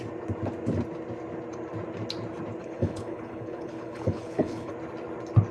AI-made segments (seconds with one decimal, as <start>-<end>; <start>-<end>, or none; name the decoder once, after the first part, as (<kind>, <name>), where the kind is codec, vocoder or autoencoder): 2.6-4.7 (codec, HILCodec)

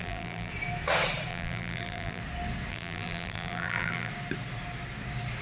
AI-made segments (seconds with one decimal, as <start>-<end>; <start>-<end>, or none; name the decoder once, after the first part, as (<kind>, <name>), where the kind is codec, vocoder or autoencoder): 0.0-0.5 (vocoder, BigVGAN v2); 1.3-2.2; 2.7-4.1